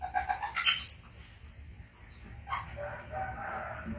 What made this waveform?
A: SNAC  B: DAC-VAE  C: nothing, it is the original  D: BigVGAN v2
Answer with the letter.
C